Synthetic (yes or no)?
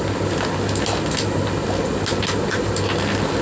no